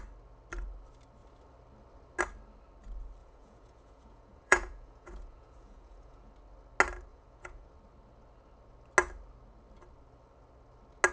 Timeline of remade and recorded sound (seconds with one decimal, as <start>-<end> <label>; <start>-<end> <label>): 0.0-3.2 recorded; 3.2-6.3 remade; 6.3-7.1 recorded; 7.1-7.7 remade; 7.7-11.1 recorded